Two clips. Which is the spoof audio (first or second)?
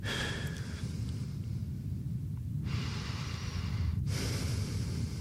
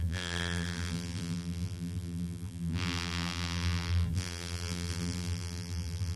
second